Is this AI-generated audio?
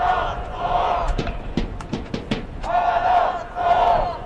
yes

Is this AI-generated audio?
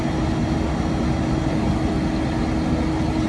no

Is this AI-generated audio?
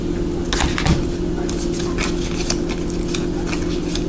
no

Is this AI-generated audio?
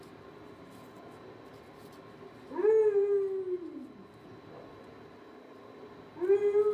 no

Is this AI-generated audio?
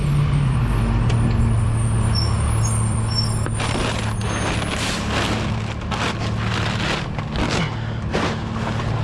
no